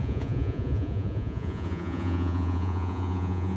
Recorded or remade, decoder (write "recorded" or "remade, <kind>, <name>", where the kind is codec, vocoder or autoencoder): remade, vocoder, Vocos